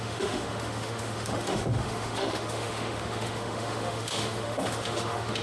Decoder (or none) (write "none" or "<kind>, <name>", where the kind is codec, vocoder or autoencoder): autoencoder, DAC-VAE